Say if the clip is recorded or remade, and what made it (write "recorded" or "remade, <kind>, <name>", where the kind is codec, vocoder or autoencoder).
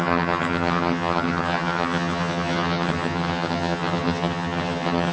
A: remade, vocoder, HiFi-GAN